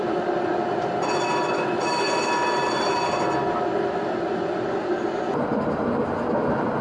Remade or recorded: remade